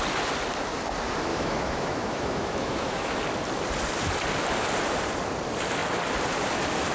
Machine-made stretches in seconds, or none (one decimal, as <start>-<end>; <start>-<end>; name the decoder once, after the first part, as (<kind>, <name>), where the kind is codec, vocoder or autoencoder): 1.3-3.2 (autoencoder, DAC-VAE)